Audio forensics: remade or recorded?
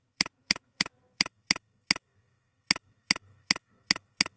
remade